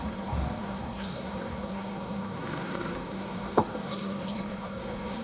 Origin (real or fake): fake